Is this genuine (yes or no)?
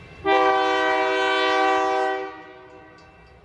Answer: yes